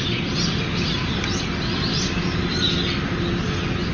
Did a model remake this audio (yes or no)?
no